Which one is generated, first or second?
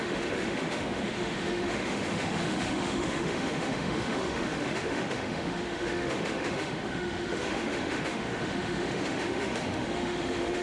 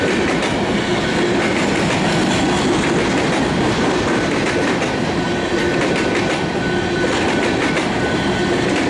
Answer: first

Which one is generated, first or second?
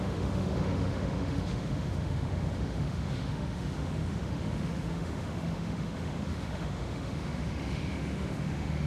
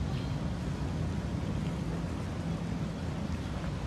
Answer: first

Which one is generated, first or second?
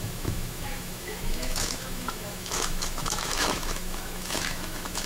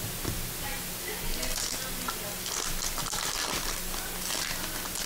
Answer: first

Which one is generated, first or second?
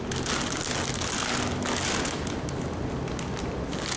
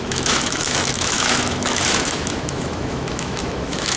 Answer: second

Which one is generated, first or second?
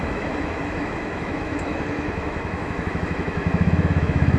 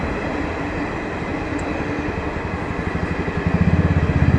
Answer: first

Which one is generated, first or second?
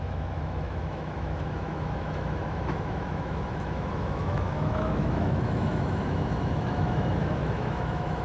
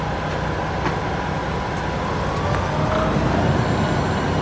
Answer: first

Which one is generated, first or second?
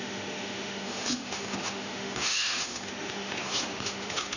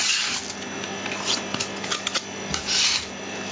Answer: first